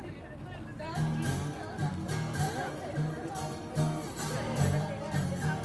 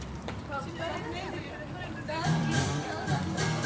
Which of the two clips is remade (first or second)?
second